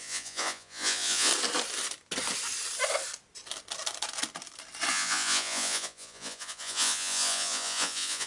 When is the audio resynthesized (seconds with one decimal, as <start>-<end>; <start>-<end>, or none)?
0.0-1.3; 4.9-8.3